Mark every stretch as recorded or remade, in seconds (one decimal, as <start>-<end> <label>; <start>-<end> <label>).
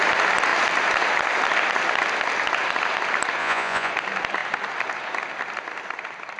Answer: 0.0-3.4 recorded; 3.4-3.9 remade; 3.9-6.4 recorded